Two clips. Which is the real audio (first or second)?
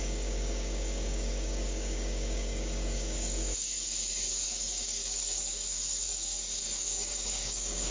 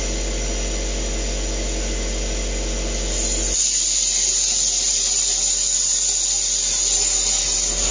second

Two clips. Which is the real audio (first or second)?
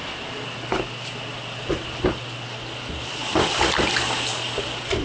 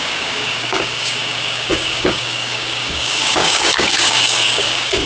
first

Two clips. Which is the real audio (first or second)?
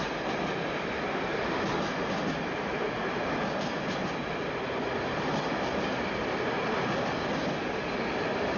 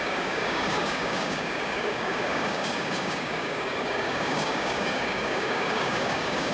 first